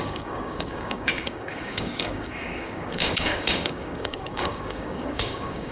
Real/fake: fake